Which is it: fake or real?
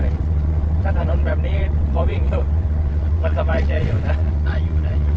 fake